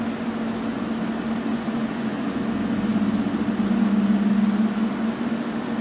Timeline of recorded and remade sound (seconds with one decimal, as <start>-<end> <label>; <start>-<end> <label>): 0.0-1.5 recorded; 1.5-2.4 remade; 2.4-5.8 recorded